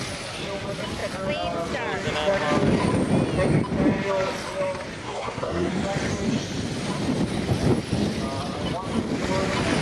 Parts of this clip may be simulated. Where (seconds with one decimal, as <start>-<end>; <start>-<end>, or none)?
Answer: 5.0-5.7